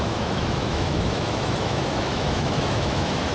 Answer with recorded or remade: remade